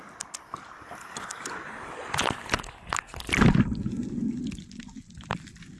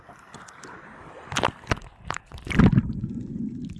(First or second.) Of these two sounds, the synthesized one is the second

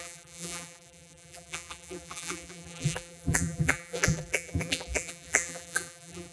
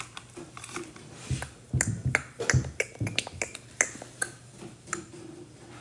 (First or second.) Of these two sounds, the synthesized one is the first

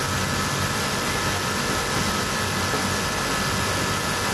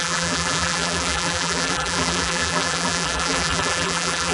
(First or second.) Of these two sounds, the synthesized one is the second